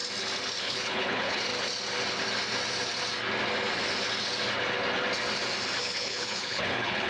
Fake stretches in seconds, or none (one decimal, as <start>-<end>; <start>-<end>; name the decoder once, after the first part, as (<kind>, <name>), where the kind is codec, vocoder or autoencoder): 0.6-1.5 (codec, HILCodec); 5.8-7.1